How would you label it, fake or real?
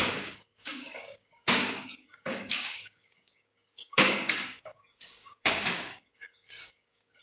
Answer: fake